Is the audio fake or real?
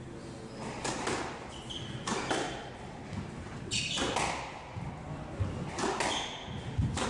real